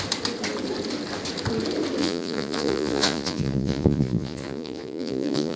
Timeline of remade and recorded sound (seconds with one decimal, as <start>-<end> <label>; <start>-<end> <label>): 0.0-2.0 recorded; 2.0-5.6 remade